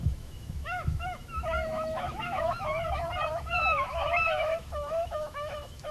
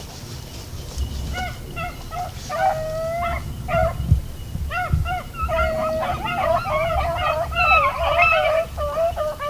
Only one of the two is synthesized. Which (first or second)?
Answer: first